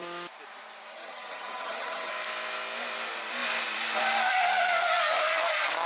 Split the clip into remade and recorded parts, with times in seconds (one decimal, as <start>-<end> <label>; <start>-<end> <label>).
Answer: 0.0-0.9 recorded; 0.9-2.1 remade; 2.1-5.9 recorded